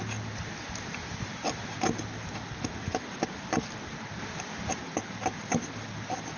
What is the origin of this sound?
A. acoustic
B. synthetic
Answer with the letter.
A